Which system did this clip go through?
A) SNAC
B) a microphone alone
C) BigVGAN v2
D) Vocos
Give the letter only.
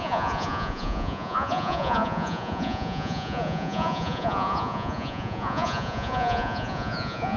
D